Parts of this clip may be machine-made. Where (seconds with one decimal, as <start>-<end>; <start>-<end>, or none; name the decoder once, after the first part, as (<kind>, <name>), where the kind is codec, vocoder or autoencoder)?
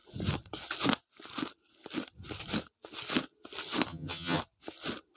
3.9-4.4 (vocoder, HiFi-GAN)